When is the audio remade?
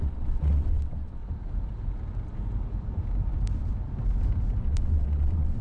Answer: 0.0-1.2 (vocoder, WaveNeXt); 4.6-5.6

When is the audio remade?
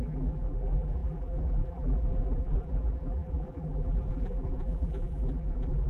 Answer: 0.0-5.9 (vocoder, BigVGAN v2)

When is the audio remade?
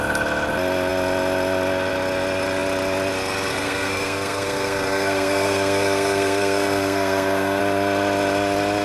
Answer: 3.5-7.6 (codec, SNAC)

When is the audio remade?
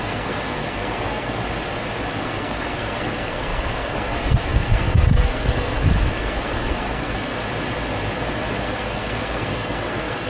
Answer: 0.0-1.4 (codec, SNAC); 2.2-7.3; 8.5-10.3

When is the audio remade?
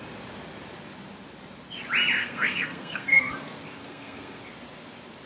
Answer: 2.2-3.3 (codec, SNAC); 3.8-4.4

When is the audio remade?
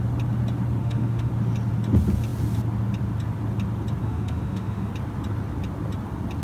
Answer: 0.8-1.3 (autoencoder, DAC-VAE); 4.0-4.9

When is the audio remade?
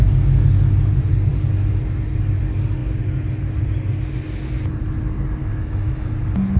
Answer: 5.4-6.1 (autoencoder, DAC-VAE)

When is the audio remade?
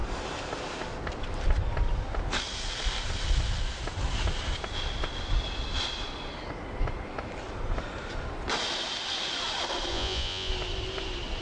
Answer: 9.9-10.5 (vocoder, Vocos)